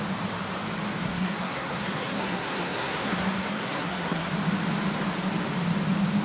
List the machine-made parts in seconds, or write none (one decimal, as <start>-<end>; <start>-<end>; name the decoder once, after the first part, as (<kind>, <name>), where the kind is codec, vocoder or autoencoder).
1.0-4.3 (codec, SNAC)

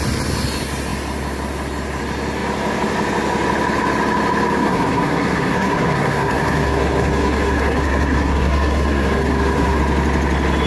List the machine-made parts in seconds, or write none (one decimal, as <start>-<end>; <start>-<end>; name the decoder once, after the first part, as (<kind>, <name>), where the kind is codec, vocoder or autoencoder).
4.6-9.8 (codec, SNAC)